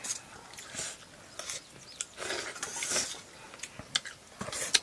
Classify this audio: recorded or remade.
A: recorded